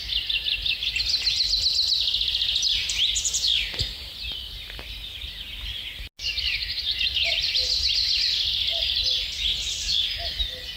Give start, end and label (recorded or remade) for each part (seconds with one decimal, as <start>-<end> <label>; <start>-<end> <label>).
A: 0.0-10.8 recorded

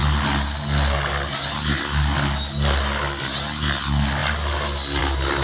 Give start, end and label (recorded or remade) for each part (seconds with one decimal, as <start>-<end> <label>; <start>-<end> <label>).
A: 0.0-5.4 recorded